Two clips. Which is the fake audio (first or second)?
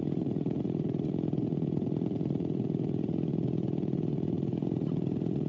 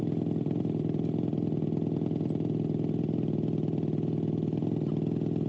first